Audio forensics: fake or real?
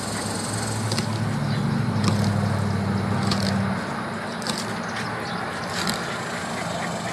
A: real